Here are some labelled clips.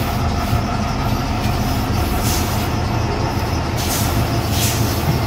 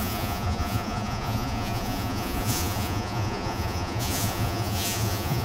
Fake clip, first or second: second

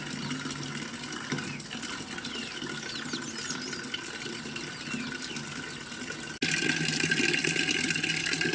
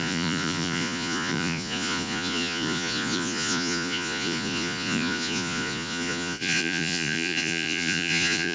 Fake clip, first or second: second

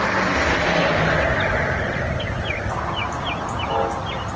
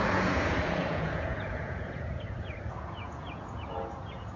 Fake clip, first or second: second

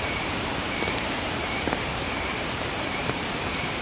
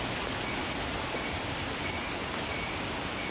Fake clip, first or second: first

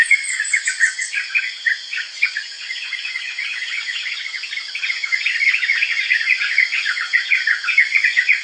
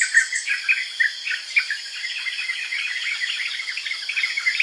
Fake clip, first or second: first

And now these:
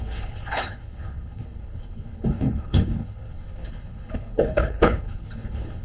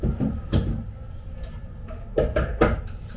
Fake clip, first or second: first